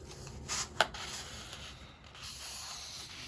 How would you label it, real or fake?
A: real